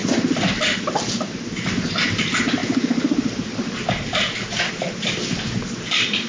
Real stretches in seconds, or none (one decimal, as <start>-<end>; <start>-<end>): 1.5-2.6